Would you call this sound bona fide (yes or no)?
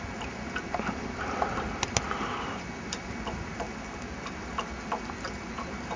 yes